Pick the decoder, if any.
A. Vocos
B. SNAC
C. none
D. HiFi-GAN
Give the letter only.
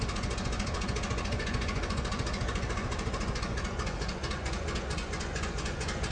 A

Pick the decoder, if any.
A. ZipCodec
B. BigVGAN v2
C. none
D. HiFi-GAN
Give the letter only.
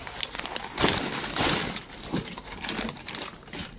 B